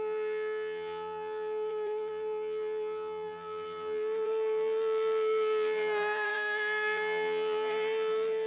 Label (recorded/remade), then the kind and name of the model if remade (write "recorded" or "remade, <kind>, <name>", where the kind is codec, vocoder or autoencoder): remade, vocoder, BigVGAN v2